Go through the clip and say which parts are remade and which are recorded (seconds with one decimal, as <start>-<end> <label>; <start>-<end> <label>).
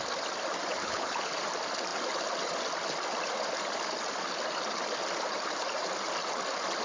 0.0-0.8 recorded; 0.8-1.3 remade; 1.3-6.8 recorded